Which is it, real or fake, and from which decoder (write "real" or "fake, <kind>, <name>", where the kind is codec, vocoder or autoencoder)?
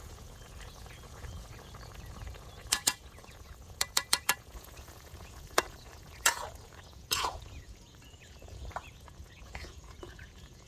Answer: fake, vocoder, Vocos